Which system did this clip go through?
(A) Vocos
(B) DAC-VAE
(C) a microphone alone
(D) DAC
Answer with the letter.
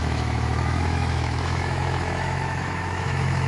B